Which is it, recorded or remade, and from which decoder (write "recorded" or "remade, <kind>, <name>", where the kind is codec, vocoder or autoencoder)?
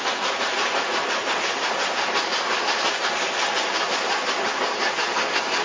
recorded